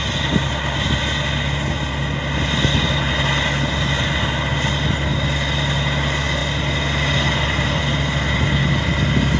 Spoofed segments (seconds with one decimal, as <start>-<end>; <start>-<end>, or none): none